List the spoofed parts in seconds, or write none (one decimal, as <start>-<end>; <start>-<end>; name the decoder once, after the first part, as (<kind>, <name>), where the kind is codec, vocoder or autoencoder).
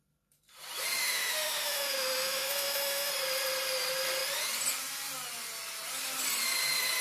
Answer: 1.0-3.1 (autoencoder, DAC-VAE)